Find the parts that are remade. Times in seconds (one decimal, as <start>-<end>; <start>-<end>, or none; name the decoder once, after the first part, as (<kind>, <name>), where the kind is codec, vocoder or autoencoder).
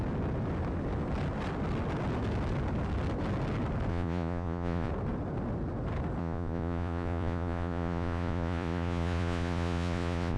3.9-4.9 (vocoder, Vocos); 6.2-10.4